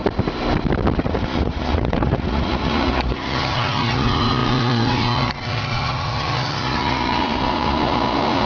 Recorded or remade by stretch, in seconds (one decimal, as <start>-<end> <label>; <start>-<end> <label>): 0.0-1.0 recorded; 1.0-8.5 remade